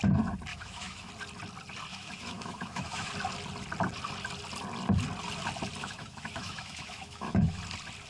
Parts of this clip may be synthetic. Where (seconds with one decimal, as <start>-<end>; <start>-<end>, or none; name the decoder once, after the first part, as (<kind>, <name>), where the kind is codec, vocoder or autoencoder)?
0.5-1.1 (autoencoder, DAC-VAE); 1.9-3.1; 5.8-7.6